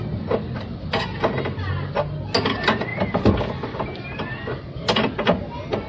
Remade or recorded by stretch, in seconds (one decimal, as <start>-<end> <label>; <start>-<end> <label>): 0.0-5.9 recorded